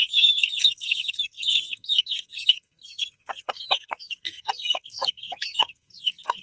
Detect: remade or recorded remade